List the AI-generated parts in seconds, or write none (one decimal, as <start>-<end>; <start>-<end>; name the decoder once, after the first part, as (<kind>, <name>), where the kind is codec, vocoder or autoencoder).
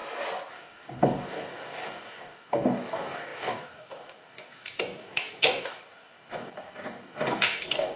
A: 0.5-8.0 (codec, DAC)